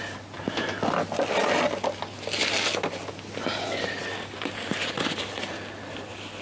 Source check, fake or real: real